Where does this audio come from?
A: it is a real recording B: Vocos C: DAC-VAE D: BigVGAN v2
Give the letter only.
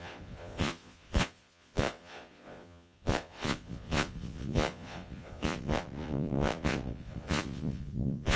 B